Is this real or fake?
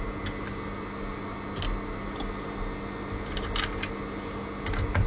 real